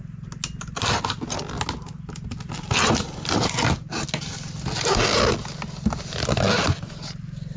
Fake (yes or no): no